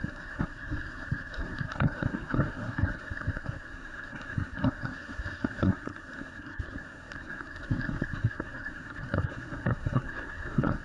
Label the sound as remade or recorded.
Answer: remade